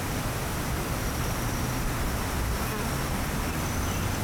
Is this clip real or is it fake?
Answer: real